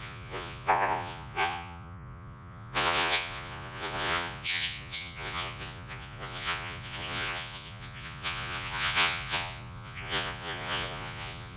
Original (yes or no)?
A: no